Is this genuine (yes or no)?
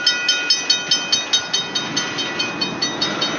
yes